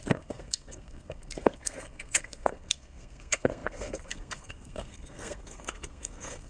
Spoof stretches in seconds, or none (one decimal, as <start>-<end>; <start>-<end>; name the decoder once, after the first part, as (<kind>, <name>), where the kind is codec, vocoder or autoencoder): 0.0-6.5 (codec, SNAC)